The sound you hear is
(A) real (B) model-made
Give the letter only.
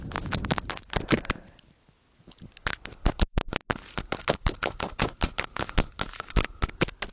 A